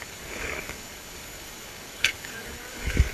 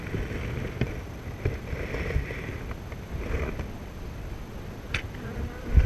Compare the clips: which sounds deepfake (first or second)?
first